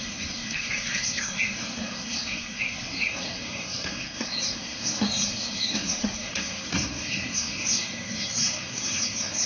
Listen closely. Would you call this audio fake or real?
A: fake